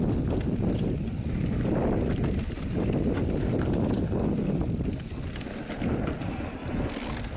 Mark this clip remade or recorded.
recorded